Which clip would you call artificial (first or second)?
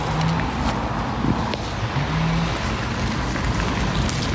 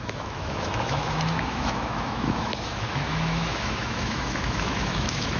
second